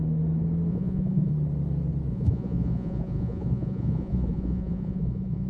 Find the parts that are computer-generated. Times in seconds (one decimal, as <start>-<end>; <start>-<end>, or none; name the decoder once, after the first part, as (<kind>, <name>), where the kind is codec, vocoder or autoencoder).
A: 0.7-1.3 (vocoder, Vocos); 2.1-5.5